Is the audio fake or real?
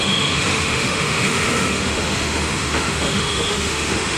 fake